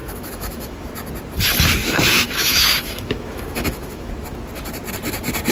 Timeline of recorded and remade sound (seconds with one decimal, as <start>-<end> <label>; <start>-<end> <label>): 0.0-0.9 remade; 0.9-1.8 recorded; 1.8-4.1 remade; 4.1-5.5 recorded